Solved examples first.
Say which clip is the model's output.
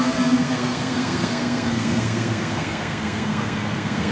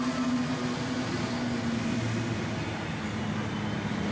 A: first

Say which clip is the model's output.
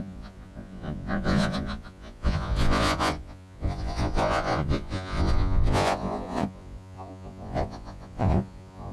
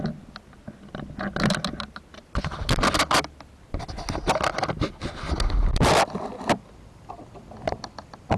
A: first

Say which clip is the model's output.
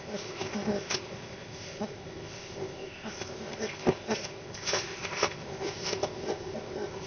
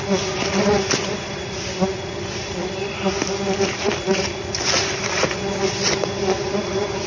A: first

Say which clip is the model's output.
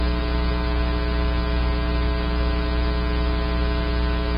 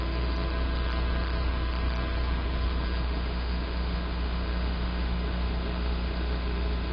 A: second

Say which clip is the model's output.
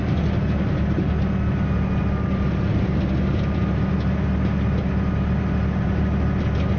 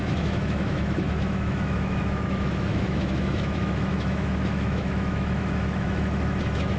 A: second